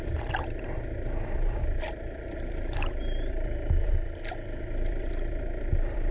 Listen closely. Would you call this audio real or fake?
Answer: fake